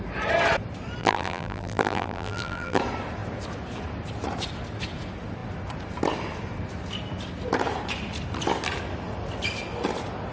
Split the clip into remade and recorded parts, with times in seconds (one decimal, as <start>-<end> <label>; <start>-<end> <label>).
0.0-1.0 recorded; 1.0-2.8 remade; 2.8-10.3 recorded